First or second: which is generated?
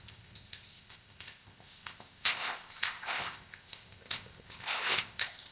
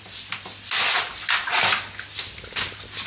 first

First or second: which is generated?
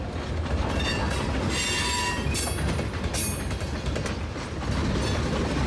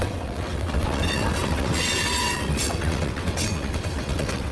second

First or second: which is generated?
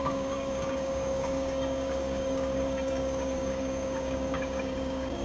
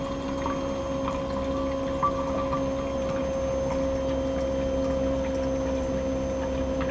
first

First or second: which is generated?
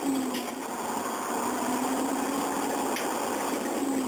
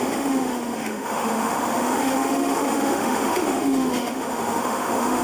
second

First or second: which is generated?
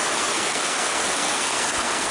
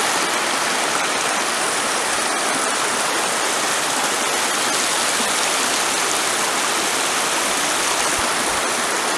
first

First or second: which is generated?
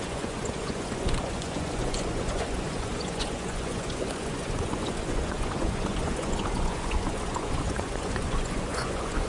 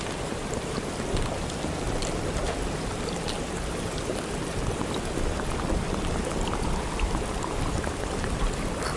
first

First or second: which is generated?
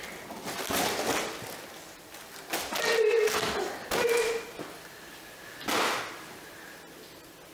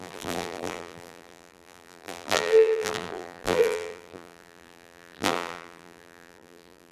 second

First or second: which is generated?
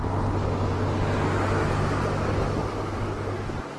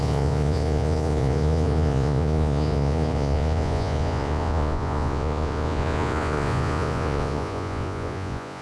second